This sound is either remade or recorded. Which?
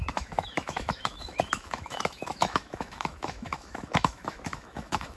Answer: remade